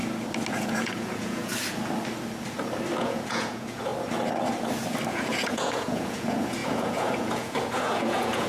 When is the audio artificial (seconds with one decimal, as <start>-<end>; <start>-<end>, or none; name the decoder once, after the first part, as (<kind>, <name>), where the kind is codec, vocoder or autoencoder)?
0.5-1.5 (vocoder, Vocos); 3.0-3.9; 5.1-8.5